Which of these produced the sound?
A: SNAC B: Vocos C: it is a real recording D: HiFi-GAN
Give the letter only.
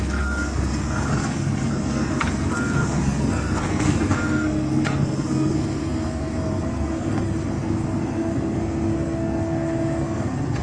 A